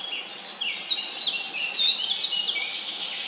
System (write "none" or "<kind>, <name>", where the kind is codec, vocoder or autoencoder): none